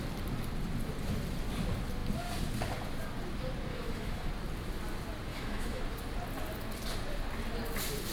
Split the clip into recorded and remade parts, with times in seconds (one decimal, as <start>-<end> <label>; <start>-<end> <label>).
0.0-3.7 recorded; 3.7-4.3 remade; 4.3-5.3 recorded; 5.3-5.8 remade; 5.8-8.1 recorded

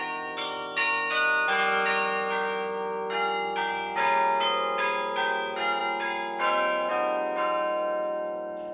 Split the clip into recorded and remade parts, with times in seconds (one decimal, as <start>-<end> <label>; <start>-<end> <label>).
0.0-8.7 recorded